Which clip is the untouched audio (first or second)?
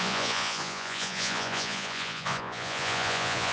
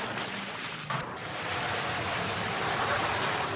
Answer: second